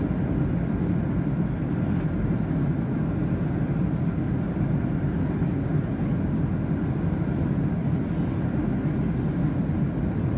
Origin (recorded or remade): recorded